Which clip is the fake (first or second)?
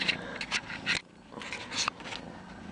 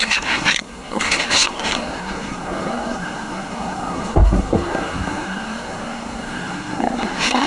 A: second